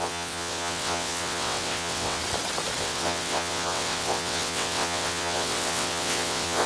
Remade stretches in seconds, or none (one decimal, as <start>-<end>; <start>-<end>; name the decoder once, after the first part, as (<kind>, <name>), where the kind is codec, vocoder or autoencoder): 0.0-2.2 (vocoder, WaveNeXt); 2.8-6.7